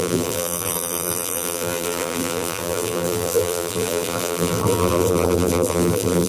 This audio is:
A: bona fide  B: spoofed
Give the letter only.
B